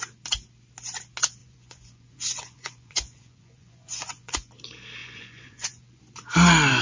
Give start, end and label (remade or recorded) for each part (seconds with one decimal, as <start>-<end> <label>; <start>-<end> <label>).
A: 0.0-1.4 recorded; 1.4-4.5 remade; 4.5-5.0 recorded; 5.0-6.0 remade; 6.0-6.8 recorded